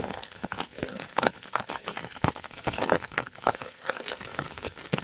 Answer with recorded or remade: remade